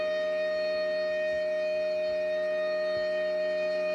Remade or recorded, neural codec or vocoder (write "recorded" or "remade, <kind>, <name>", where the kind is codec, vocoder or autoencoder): recorded